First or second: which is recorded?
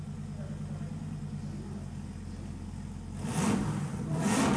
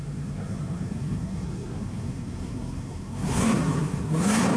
first